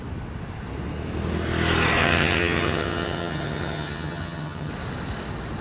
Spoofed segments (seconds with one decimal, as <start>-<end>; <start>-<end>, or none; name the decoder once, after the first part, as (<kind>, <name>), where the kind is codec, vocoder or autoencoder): 2.0-4.7 (vocoder, HiFi-GAN)